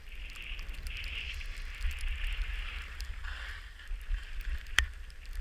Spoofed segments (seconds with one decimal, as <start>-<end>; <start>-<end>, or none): none